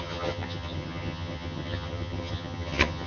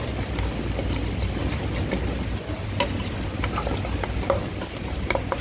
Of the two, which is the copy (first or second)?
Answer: first